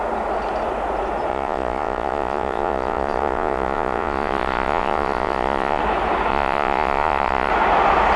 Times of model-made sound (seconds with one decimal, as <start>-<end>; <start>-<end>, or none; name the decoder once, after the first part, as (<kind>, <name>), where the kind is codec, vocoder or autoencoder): 1.3-5.8 (vocoder, Vocos); 6.3-7.5